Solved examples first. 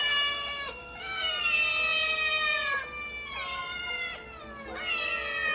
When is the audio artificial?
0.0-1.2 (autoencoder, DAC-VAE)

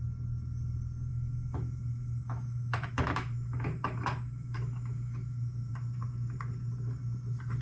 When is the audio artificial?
1.1-5.7 (autoencoder, DAC-VAE)

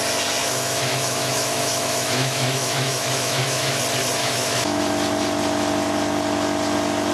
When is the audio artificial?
0.4-3.8 (autoencoder, DAC-VAE); 4.2-4.8

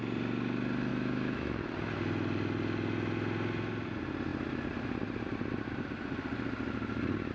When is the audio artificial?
0.9-1.7 (autoencoder, DAC-VAE)